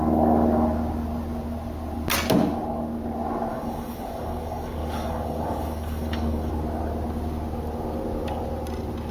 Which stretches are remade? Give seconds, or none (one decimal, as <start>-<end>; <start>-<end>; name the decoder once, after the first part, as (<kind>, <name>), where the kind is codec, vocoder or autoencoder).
3.5-6.5 (codec, DAC)